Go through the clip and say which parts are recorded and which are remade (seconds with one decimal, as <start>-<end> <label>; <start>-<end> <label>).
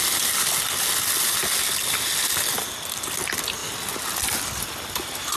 0.0-5.4 recorded